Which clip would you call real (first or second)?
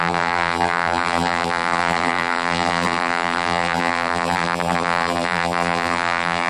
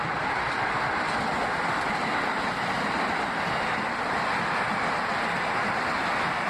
second